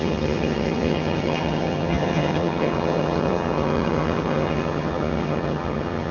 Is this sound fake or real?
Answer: fake